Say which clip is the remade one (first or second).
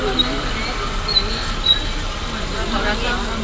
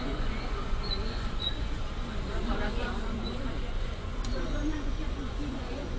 second